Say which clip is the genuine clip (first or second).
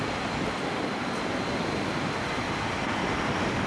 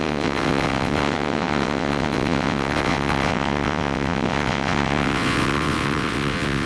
first